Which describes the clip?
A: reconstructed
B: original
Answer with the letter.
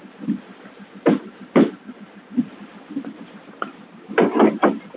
B